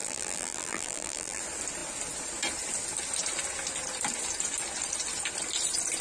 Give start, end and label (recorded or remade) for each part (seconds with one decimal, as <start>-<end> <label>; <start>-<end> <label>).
0.0-1.4 remade; 1.4-6.0 recorded